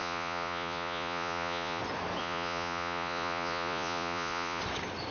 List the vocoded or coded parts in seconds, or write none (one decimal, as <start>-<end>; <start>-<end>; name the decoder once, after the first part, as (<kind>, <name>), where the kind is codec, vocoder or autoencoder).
0.0-1.8 (vocoder, Vocos); 2.2-4.6